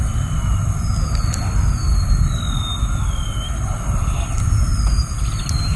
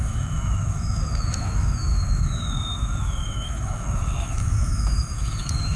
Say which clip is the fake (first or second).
second